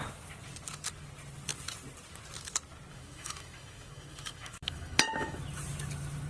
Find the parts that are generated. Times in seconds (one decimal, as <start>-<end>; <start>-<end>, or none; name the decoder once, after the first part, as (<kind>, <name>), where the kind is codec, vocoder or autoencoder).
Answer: 2.9-5.4 (autoencoder, DAC-VAE)